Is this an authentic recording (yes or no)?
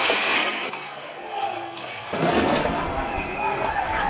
no